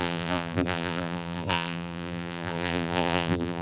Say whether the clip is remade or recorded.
remade